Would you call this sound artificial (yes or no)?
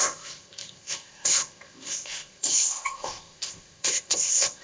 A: yes